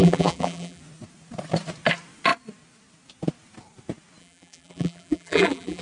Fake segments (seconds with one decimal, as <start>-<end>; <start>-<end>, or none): 0.0-0.8; 4.2-5.8